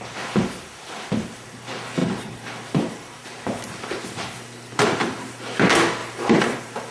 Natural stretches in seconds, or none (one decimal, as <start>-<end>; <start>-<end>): 0.0-2.0; 3.4-6.0